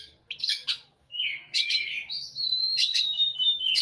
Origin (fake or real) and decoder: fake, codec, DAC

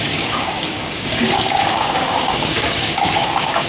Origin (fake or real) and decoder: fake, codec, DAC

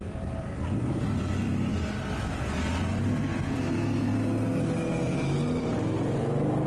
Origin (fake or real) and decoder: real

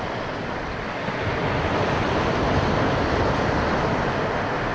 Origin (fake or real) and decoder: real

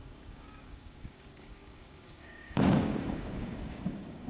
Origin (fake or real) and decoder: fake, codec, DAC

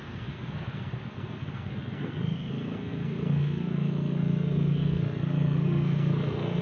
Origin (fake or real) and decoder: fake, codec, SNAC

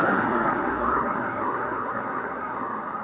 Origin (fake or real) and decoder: fake, codec, SNAC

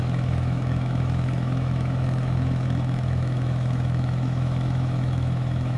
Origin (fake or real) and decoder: fake, autoencoder, DAC-VAE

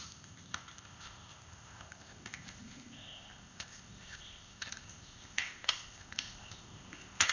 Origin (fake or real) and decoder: fake, codec, ZipCodec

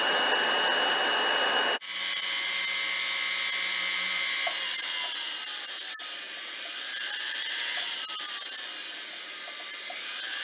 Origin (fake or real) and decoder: real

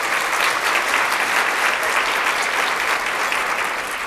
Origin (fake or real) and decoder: real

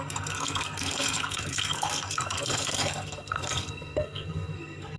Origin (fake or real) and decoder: fake, codec, SNAC